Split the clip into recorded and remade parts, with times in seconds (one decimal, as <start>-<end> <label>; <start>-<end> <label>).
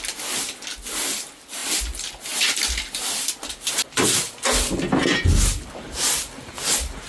0.0-7.1 recorded